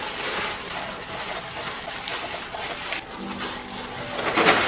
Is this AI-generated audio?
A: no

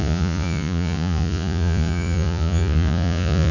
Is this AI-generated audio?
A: yes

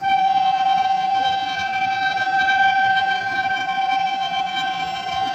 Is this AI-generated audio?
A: yes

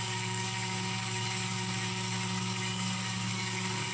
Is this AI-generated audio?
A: yes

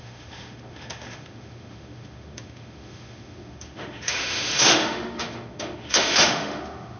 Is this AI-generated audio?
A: yes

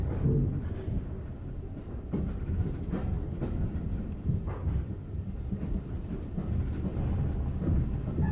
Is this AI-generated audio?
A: no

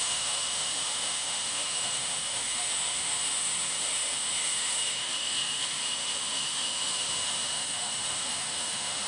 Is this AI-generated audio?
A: yes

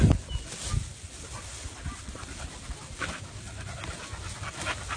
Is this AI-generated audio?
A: no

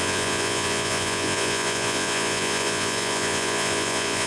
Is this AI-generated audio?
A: yes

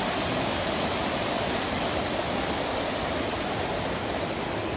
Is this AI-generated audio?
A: no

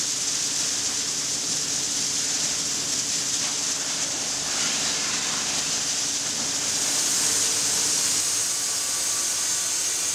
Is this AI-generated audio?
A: no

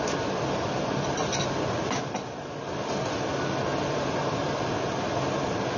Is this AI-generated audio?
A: no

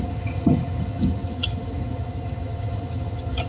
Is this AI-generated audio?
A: yes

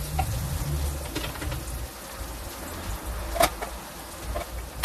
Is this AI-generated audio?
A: no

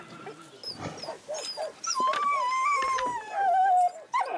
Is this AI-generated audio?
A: no